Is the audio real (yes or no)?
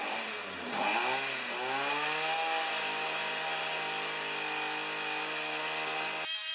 yes